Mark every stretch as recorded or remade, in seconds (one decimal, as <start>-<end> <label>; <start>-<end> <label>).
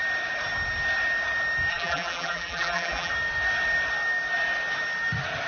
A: 0.0-1.7 recorded; 1.7-3.1 remade; 3.1-5.5 recorded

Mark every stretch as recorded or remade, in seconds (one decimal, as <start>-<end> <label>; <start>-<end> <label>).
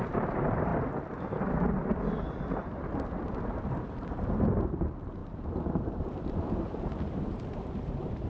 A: 0.0-0.7 remade; 0.7-3.4 recorded; 3.4-8.3 remade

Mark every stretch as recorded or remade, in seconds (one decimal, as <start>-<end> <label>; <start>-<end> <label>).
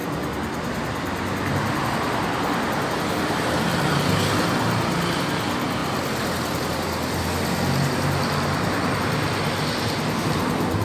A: 0.0-10.8 recorded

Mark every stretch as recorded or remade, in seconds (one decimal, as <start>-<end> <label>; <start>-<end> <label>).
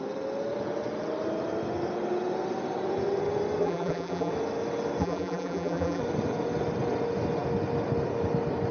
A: 0.0-3.6 recorded; 3.6-4.3 remade; 4.3-5.0 recorded; 5.0-6.0 remade; 6.0-8.7 recorded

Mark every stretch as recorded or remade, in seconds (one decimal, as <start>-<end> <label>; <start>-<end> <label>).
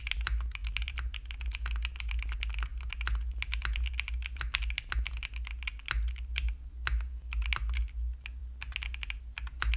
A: 0.0-9.8 recorded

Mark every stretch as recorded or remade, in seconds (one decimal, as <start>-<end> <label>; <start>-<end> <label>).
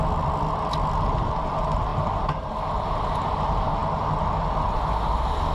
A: 0.0-5.5 recorded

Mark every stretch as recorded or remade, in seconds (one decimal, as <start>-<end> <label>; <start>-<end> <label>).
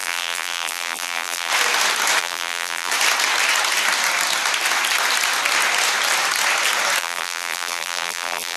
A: 0.0-1.5 remade; 1.5-2.2 recorded; 2.2-2.9 remade; 2.9-7.0 recorded; 7.0-8.6 remade